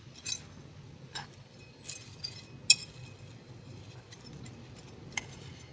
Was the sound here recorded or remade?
recorded